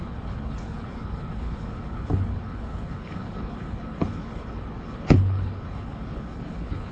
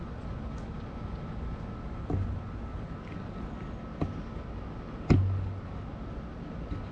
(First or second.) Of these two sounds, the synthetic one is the first